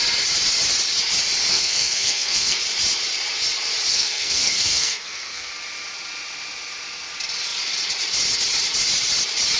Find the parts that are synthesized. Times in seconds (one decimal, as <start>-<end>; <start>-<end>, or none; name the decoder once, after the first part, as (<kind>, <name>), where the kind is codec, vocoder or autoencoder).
1.5-2.6 (codec, SNAC); 3.9-5.5